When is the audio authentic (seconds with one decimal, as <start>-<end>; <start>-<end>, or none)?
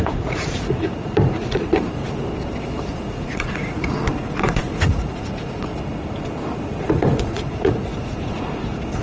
2.0-2.9; 5.7-6.8